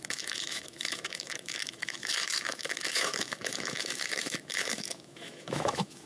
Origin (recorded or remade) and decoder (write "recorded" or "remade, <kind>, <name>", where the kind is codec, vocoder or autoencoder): remade, autoencoder, DAC-VAE